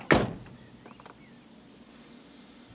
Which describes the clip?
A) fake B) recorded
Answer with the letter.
B